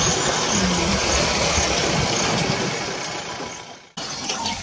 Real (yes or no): yes